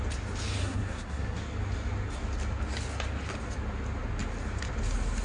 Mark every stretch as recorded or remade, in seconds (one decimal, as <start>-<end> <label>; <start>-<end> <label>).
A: 0.0-0.6 recorded; 0.6-1.4 remade; 1.4-5.2 recorded